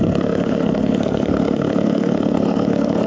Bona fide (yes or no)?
no